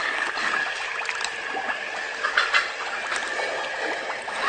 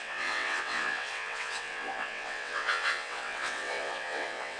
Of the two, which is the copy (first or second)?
second